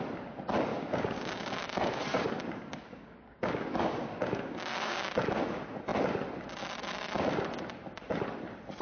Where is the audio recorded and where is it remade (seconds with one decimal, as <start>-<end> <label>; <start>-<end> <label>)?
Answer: 0.0-0.7 recorded; 0.7-1.6 remade; 1.6-2.1 recorded; 2.1-5.1 remade; 5.1-8.8 recorded